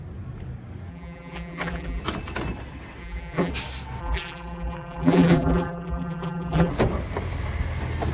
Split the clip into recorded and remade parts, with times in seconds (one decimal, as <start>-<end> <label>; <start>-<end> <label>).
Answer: 0.0-0.9 recorded; 0.9-2.0 remade; 2.0-3.0 recorded; 3.0-3.5 remade; 3.5-4.0 recorded; 4.0-6.7 remade; 6.7-8.1 recorded